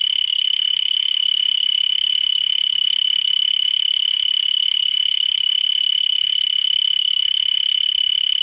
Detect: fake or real fake